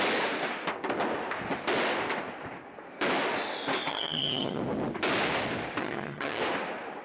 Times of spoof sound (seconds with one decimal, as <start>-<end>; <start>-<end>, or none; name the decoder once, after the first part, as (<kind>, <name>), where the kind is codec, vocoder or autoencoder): 3.9-4.6 (vocoder, HiFi-GAN); 5.8-6.4